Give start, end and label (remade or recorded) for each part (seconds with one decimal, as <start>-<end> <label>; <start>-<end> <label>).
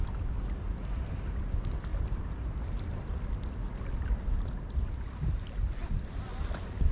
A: 0.0-6.9 recorded